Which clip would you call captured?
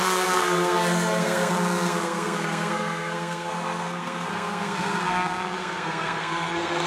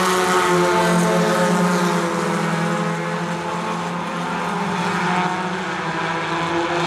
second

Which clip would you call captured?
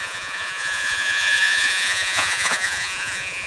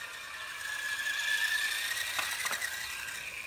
second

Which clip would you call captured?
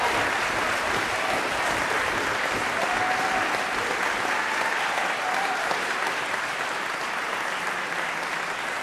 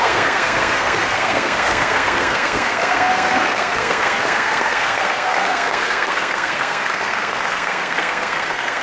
first